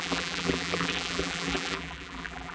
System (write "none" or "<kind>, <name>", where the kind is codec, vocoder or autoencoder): vocoder, BigVGAN v2